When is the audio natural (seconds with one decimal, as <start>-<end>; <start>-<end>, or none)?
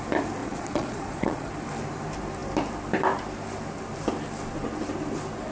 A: 0.0-0.4; 1.5-5.5